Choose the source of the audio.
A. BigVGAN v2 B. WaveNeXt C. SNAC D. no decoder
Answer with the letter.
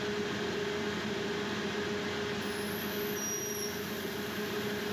D